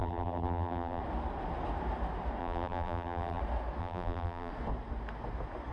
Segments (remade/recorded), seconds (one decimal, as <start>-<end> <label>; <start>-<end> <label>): 0.0-1.0 remade; 1.0-2.4 recorded; 2.4-3.4 remade; 3.4-3.8 recorded; 3.8-4.5 remade; 4.5-5.7 recorded